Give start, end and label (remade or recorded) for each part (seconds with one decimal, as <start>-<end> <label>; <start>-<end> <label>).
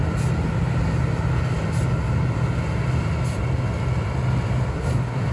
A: 0.0-4.7 recorded; 4.7-5.3 remade